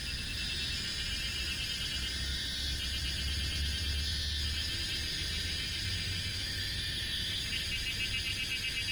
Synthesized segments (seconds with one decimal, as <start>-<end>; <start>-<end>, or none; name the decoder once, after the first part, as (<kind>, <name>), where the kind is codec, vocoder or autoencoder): 6.3-6.8 (autoencoder, DAC-VAE)